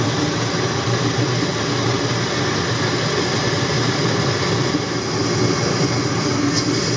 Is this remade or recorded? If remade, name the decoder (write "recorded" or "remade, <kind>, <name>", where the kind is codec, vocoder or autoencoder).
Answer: recorded